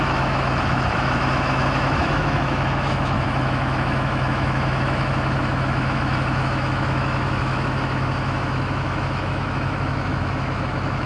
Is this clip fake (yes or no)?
yes